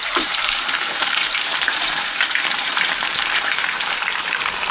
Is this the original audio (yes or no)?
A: no